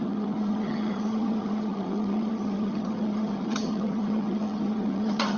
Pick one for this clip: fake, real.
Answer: fake